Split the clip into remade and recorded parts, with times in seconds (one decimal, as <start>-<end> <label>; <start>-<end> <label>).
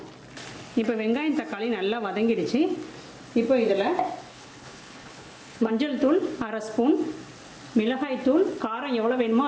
0.0-4.3 recorded; 4.3-5.7 remade; 5.7-9.5 recorded